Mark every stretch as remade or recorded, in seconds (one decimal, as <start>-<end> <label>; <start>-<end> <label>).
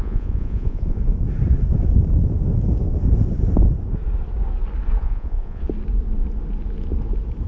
0.0-1.0 remade; 1.0-5.0 recorded; 5.0-5.6 remade; 5.6-7.5 recorded